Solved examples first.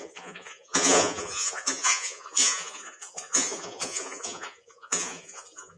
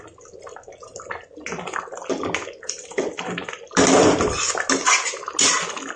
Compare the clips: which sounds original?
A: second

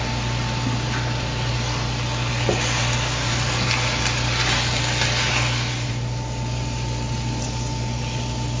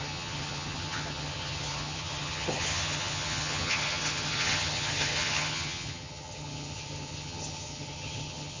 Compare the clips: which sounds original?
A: first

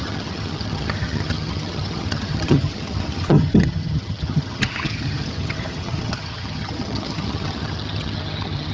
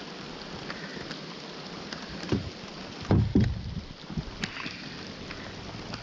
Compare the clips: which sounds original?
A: second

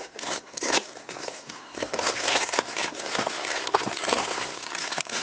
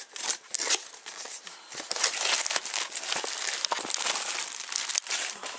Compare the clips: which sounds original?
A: second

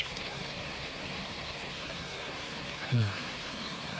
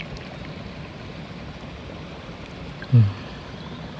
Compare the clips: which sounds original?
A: second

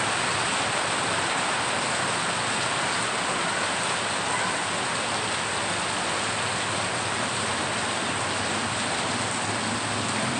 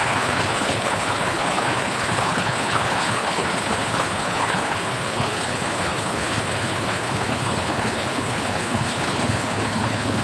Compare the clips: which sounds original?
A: first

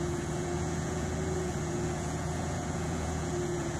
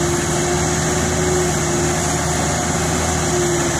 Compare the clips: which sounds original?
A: second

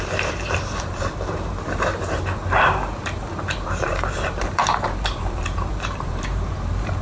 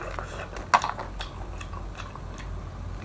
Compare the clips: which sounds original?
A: second